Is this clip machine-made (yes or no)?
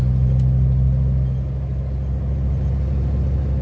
no